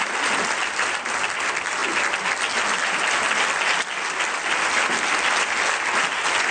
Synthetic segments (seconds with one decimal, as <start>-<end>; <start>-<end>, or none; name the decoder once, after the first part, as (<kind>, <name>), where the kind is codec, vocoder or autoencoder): none